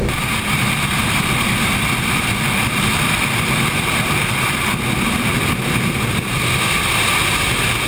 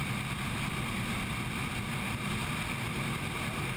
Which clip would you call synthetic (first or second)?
first